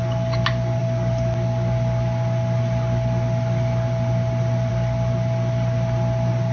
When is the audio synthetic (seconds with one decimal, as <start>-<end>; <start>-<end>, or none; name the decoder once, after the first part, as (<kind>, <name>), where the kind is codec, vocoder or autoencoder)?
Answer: none

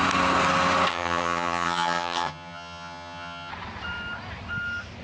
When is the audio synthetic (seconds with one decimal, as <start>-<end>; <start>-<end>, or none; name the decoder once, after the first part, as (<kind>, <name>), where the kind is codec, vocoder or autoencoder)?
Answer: 0.9-3.5 (vocoder, HiFi-GAN)